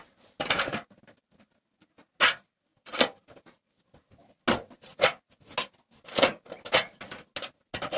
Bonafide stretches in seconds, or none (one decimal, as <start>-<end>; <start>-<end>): 0.0-8.0